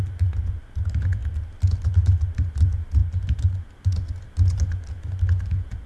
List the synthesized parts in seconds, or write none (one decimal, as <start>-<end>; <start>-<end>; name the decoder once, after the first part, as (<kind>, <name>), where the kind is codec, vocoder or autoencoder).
none